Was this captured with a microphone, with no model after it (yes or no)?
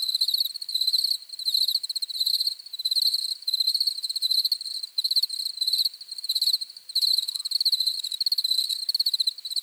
no